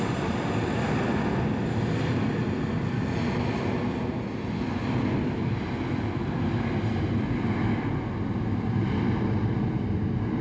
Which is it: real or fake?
real